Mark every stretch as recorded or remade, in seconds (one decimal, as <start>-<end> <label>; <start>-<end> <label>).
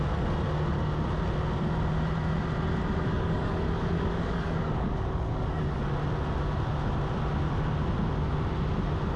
0.0-3.1 recorded; 3.1-5.8 remade; 5.8-9.2 recorded